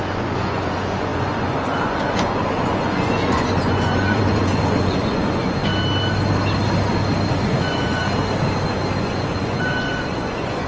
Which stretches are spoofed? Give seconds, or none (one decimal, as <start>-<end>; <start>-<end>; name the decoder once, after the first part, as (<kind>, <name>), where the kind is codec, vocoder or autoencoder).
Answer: 0.0-5.7 (vocoder, Vocos); 7.3-8.0; 9.0-10.7